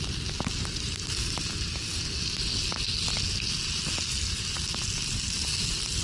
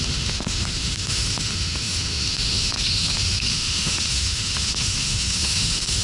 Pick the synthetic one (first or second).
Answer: second